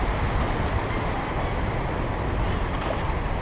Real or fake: real